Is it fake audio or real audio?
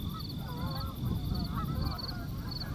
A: real